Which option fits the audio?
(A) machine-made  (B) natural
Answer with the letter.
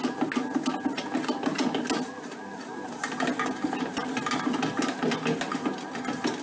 B